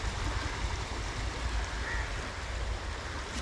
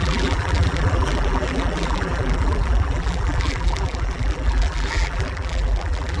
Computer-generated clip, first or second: second